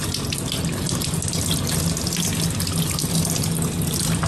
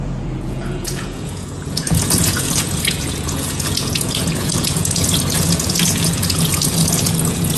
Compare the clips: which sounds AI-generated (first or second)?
second